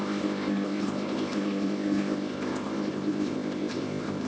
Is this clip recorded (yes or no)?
no